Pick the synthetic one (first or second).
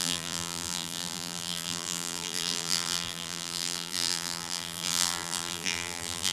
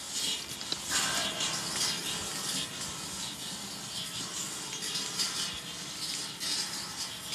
first